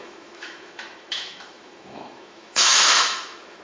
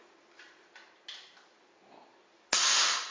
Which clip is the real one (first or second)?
second